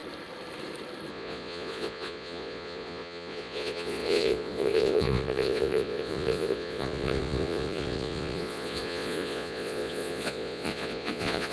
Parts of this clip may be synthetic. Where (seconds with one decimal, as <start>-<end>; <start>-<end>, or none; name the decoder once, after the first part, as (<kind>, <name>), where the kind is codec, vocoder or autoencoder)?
1.1-11.5 (vocoder, Vocos)